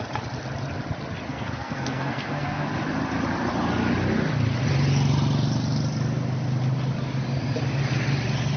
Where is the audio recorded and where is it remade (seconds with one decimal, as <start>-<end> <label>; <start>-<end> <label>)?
0.0-1.3 recorded; 1.3-2.7 remade; 2.7-8.6 recorded